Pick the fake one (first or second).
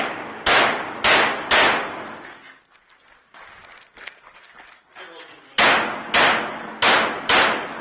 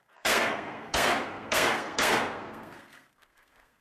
second